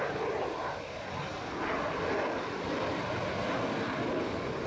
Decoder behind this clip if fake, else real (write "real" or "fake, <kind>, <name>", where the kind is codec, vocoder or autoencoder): real